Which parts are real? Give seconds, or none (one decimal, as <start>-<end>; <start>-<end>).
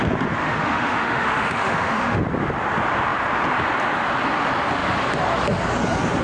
0.0-0.4; 2.2-6.2